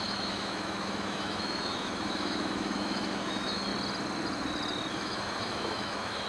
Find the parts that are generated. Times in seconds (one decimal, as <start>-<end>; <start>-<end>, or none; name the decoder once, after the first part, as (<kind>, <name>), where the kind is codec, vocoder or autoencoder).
0.0-3.7 (autoencoder, DAC-VAE); 4.9-6.3